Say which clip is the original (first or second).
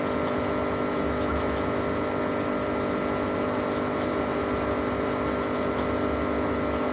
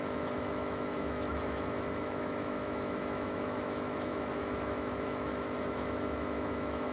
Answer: first